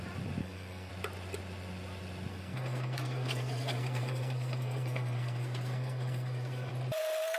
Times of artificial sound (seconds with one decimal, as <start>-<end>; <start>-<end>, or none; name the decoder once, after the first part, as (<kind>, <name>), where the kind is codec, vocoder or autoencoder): 0.4-0.9 (codec, SNAC); 2.3-6.7